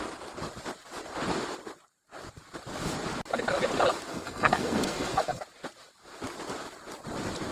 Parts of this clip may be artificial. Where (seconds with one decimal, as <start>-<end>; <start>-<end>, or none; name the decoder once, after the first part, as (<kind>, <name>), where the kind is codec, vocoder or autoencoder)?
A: 4.1-5.4 (codec, SNAC)